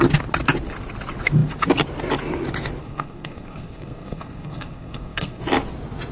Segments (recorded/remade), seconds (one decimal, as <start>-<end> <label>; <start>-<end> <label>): 0.0-2.8 recorded; 2.8-5.4 remade; 5.4-6.1 recorded